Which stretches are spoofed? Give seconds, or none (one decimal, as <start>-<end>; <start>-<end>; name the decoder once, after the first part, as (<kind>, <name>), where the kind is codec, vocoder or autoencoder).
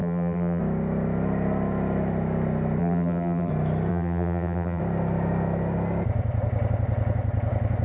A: 0.0-0.6 (vocoder, BigVGAN v2); 2.8-3.5; 3.9-4.8